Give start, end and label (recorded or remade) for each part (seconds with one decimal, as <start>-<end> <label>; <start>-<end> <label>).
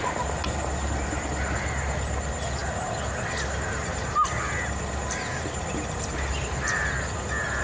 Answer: 0.0-7.6 recorded